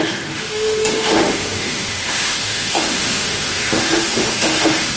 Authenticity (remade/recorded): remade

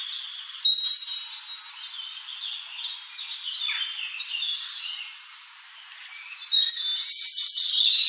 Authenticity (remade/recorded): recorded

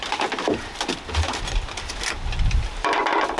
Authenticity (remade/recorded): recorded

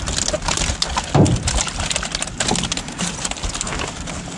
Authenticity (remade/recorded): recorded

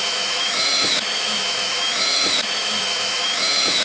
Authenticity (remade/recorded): remade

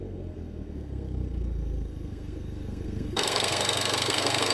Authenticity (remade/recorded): remade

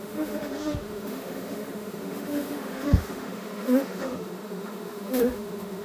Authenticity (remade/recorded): remade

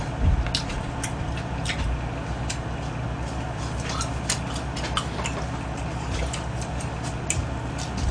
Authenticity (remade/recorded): recorded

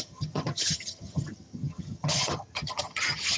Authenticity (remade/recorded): remade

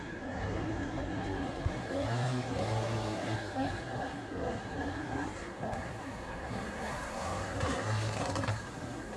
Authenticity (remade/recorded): remade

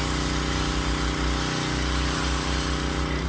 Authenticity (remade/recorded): recorded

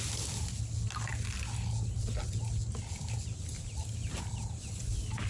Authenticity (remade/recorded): recorded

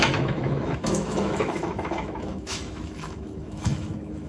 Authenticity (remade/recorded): remade